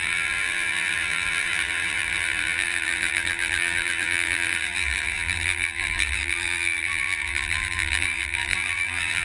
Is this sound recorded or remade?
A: remade